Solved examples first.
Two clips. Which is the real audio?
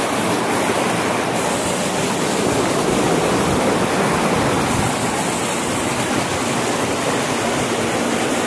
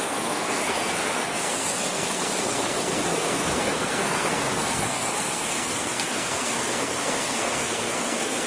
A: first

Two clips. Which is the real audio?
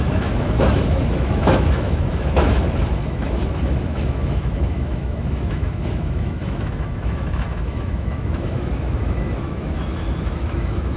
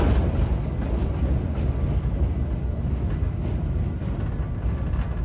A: second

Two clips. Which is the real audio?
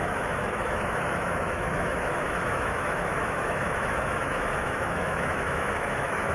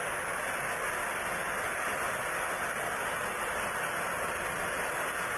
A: second